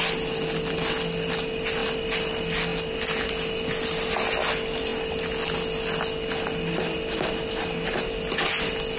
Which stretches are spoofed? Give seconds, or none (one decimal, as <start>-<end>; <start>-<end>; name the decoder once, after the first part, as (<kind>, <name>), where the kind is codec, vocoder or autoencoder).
none